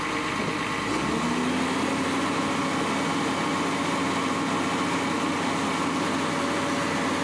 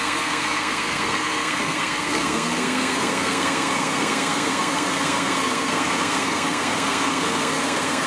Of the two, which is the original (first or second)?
first